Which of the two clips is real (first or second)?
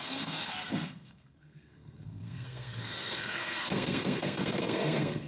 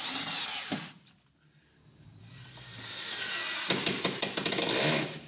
second